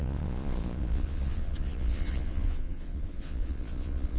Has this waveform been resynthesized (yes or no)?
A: yes